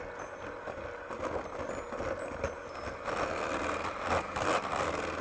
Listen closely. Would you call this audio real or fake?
real